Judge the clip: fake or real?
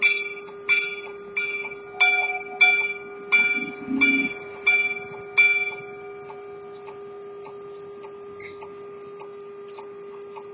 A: real